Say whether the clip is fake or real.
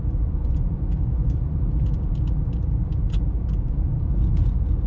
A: fake